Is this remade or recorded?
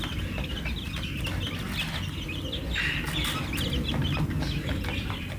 recorded